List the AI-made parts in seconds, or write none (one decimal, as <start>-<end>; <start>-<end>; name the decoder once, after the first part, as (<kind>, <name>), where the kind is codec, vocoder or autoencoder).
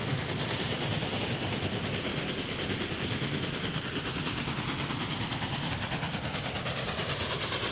2.1-5.7 (vocoder, BigVGAN v2); 7.0-7.7